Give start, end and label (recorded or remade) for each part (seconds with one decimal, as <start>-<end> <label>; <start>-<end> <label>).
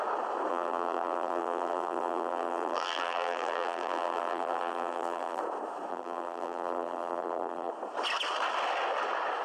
0.0-0.5 recorded; 0.5-5.4 remade; 5.4-5.9 recorded; 5.9-7.7 remade; 7.7-9.4 recorded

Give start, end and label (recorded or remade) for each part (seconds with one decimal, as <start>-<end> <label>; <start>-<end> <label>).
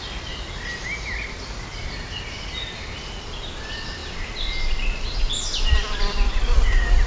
0.0-1.7 recorded; 1.7-3.3 remade; 3.3-7.1 recorded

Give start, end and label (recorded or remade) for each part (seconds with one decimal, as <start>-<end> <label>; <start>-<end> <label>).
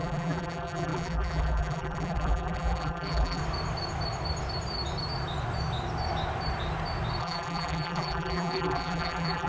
0.0-3.4 remade; 3.4-7.2 recorded; 7.2-9.5 remade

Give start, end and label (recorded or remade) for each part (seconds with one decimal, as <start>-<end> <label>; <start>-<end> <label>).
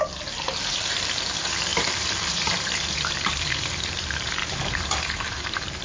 0.0-1.7 recorded; 1.7-3.7 remade; 3.7-4.4 recorded; 4.4-5.8 remade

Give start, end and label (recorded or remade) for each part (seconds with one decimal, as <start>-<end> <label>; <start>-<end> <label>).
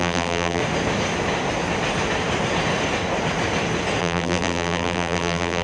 0.0-0.6 remade; 0.6-4.0 recorded; 4.0-5.6 remade